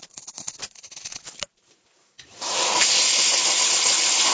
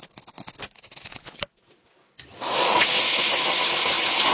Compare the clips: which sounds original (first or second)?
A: second